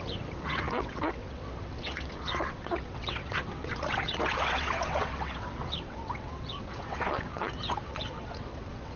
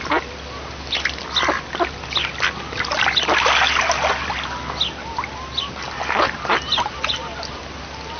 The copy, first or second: first